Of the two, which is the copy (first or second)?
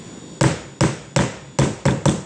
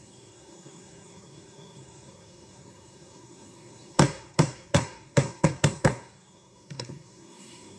second